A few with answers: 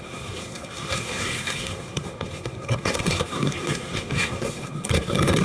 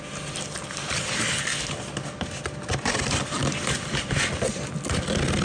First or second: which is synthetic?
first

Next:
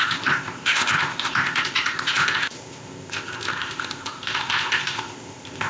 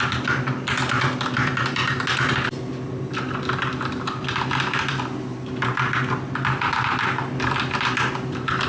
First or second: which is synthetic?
first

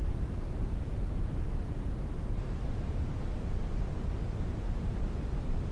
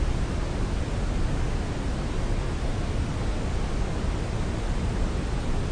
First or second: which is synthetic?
first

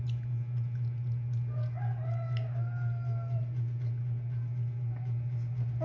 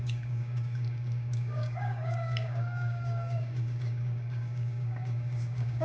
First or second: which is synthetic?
second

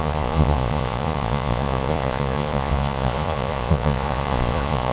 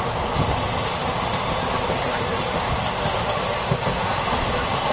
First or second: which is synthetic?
first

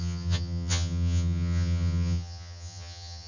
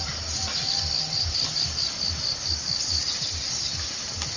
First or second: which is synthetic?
first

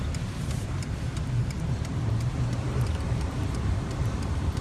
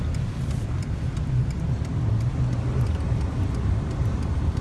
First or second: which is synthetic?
first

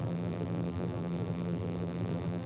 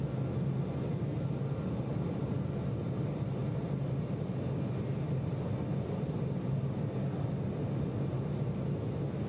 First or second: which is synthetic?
first